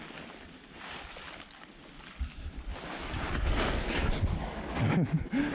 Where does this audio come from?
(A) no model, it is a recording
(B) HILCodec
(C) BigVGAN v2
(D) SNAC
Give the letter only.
A